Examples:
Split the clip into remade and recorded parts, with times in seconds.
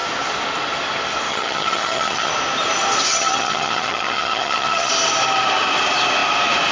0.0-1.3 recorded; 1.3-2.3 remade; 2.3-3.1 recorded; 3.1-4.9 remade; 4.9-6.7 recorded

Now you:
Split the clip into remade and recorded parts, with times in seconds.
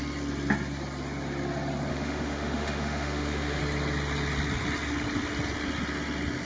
0.0-1.9 recorded; 1.9-3.6 remade; 3.6-6.5 recorded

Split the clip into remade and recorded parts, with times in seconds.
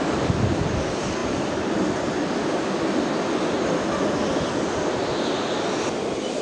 0.0-6.4 recorded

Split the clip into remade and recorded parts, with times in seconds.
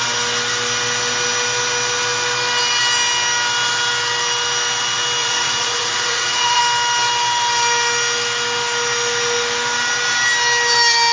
0.0-5.2 recorded; 5.2-6.6 remade; 6.6-11.1 recorded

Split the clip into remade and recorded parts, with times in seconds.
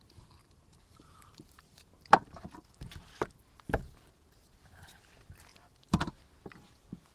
0.0-0.4 recorded; 0.4-3.3 remade; 3.3-5.5 recorded; 5.5-6.1 remade; 6.1-7.1 recorded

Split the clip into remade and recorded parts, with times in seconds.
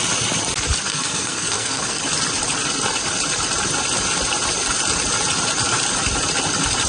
0.0-0.9 recorded; 0.9-2.0 remade; 2.0-6.9 recorded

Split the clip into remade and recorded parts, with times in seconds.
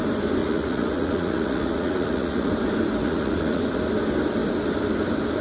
0.0-0.4 recorded; 0.4-2.5 remade; 2.5-3.0 recorded; 3.0-3.6 remade; 3.6-5.4 recorded